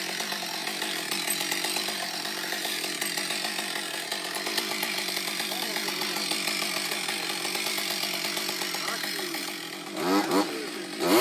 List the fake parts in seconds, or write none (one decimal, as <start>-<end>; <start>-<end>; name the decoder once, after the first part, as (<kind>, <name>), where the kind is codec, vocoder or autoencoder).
0.6-3.0 (vocoder, BigVGAN v2)